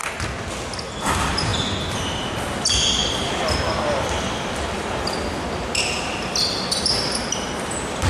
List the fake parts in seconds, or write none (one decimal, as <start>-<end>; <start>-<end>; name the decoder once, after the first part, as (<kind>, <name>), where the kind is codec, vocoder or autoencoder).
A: none